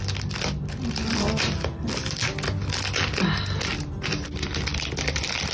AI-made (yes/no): no